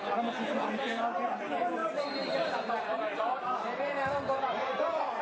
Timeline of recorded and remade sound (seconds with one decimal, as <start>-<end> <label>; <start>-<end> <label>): 0.0-1.8 recorded; 1.8-4.8 remade; 4.8-5.2 recorded